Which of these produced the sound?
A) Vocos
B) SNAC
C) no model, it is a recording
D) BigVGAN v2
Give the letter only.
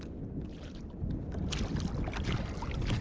C